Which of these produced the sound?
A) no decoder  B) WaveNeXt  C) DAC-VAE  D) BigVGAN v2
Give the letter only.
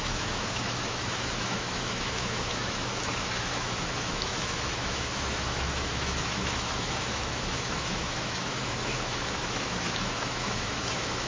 C